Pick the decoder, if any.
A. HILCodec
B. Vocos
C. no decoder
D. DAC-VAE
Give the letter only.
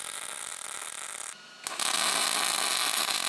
C